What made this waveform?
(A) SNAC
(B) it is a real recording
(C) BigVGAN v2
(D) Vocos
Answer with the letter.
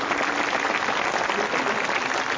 B